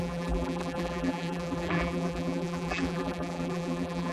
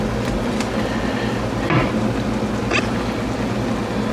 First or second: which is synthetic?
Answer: first